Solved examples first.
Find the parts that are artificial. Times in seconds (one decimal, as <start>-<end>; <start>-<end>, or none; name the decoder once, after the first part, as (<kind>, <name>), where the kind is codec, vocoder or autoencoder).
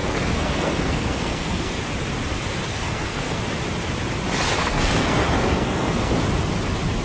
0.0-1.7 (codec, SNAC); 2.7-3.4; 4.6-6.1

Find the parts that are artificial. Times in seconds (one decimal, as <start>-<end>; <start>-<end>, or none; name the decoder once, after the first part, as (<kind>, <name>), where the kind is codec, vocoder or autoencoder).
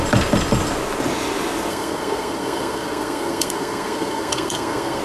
1.7-5.0 (codec, SNAC)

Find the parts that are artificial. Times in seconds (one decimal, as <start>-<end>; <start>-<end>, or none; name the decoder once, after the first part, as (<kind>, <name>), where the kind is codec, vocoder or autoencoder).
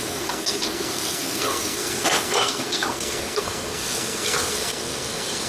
0.0-5.5 (codec, SNAC)